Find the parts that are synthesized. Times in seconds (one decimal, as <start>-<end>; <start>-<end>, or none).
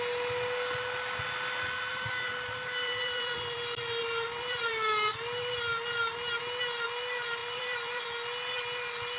1.9-4.6; 7.4-8.0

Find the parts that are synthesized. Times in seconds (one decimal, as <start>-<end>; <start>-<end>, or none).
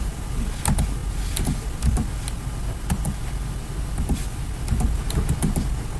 none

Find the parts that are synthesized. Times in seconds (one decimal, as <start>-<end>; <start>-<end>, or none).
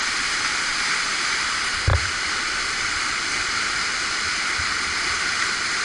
0.5-1.2; 1.9-3.3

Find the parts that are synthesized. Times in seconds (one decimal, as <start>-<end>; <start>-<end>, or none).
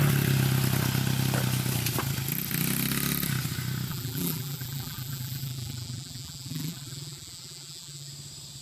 3.9-8.1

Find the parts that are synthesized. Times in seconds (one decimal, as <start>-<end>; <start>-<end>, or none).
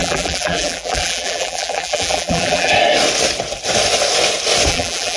0.0-2.7; 4.7-5.2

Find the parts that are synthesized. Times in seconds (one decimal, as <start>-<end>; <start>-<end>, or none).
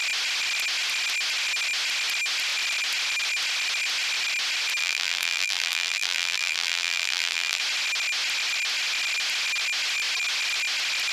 4.8-7.6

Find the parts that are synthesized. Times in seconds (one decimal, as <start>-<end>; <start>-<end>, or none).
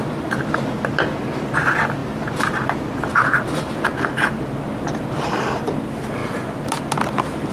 none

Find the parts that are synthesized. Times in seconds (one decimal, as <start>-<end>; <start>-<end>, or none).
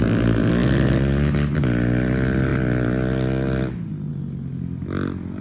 none